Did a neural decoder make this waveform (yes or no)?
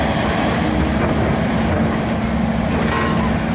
no